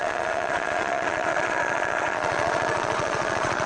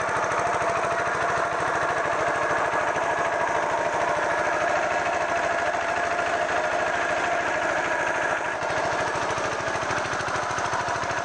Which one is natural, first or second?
second